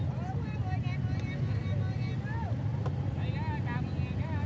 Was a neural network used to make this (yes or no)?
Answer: no